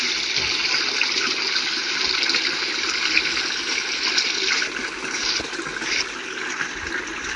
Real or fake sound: real